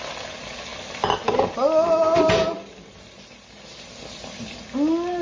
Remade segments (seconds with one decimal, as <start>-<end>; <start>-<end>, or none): none